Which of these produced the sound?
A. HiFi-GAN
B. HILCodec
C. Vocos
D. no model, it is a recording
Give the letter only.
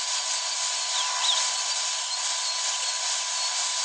D